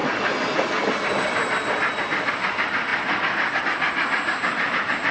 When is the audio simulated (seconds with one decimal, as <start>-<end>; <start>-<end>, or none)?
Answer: none